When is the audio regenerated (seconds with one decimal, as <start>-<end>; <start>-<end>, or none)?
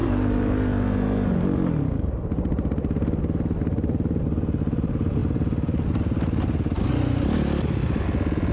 none